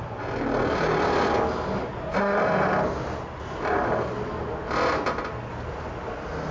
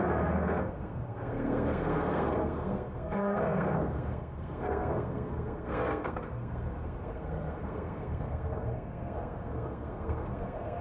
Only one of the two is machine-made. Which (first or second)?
second